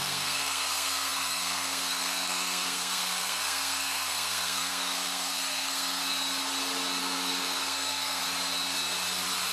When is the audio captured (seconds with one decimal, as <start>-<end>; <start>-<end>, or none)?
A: 6.0-7.0; 8.2-9.5